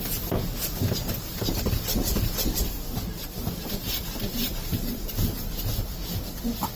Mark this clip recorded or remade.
recorded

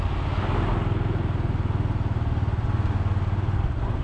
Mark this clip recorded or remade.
recorded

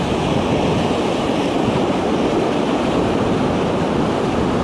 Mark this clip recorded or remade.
recorded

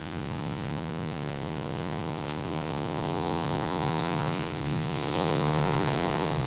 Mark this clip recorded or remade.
remade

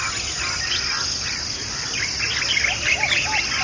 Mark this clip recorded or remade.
recorded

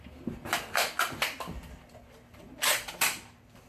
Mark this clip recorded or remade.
recorded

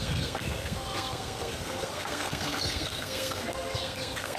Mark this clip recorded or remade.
remade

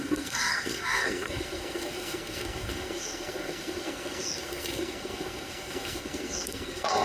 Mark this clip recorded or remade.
remade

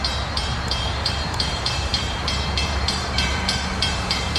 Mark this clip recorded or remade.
remade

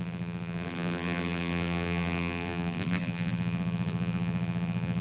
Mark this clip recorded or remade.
remade